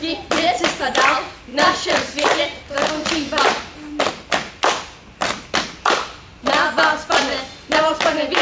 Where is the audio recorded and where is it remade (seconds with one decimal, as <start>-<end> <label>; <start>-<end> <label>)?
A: 0.0-8.4 recorded